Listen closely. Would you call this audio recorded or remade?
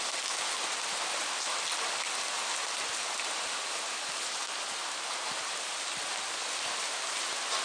recorded